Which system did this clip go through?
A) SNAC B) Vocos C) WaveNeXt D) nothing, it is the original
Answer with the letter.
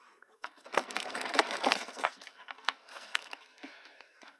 A